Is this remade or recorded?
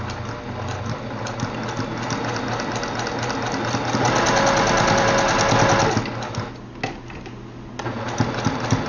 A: recorded